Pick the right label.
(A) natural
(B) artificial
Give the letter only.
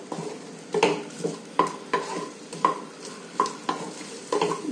A